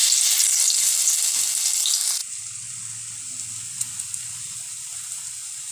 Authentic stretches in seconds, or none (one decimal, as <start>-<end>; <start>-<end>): 0.0-5.7